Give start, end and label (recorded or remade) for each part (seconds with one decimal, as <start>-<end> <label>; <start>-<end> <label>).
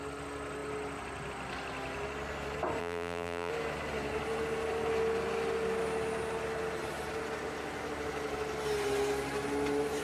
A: 0.0-2.8 recorded; 2.8-3.5 remade; 3.5-10.0 recorded